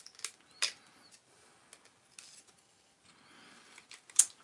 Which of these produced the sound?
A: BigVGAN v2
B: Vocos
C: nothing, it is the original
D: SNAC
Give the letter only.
C